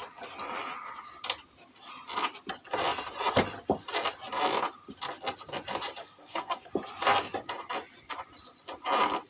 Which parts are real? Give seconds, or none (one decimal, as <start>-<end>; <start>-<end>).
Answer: 0.0-6.0; 6.7-9.3